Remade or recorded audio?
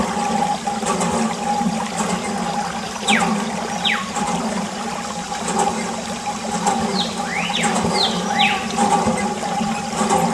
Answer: recorded